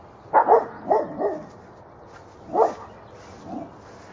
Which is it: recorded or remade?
recorded